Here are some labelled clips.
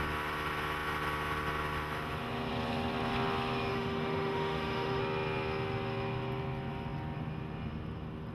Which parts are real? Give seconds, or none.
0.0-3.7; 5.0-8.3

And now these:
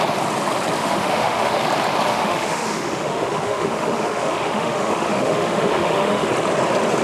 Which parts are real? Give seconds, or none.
0.0-0.8; 1.6-2.1; 6.3-7.0